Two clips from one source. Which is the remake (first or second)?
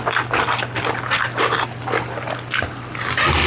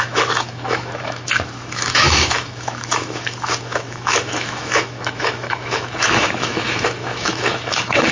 second